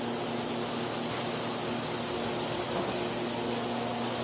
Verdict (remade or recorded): recorded